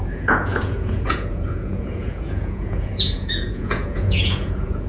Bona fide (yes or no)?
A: no